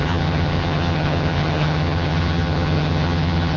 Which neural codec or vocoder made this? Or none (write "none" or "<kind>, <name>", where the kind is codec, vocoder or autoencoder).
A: vocoder, HiFi-GAN